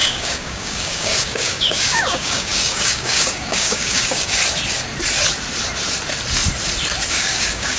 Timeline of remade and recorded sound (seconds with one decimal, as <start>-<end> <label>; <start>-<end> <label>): 0.0-4.4 remade; 4.4-7.1 recorded; 7.1-7.8 remade

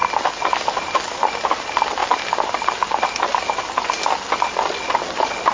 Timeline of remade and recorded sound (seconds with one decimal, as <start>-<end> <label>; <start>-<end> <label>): 0.0-5.5 recorded

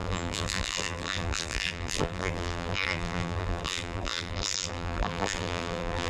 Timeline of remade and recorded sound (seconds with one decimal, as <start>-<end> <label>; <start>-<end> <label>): 0.0-6.1 remade

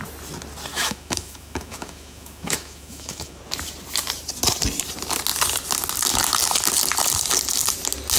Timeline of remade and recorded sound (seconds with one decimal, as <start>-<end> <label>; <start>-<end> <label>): 0.0-0.7 recorded; 0.7-3.4 remade; 3.4-8.2 recorded

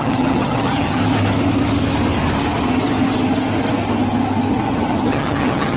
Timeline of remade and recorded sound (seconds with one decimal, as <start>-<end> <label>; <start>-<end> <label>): 0.0-1.0 remade; 1.0-4.5 recorded; 4.5-5.8 remade